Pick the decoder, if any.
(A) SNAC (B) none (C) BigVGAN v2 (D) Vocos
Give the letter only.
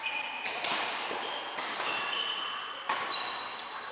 B